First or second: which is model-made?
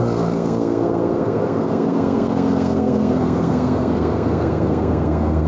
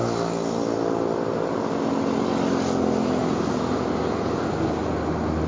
first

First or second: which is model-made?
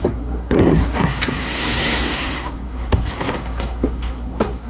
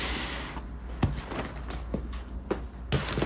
first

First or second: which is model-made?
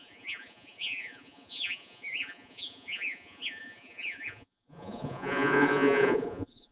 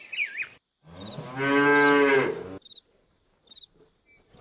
first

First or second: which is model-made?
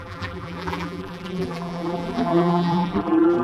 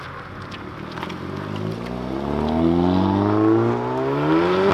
first